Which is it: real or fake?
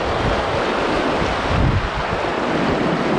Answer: real